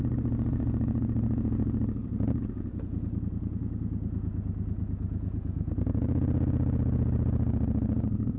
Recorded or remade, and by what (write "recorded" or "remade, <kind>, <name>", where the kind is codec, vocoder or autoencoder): remade, vocoder, Vocos